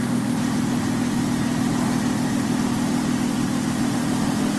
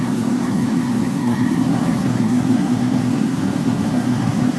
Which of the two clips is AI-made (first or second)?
second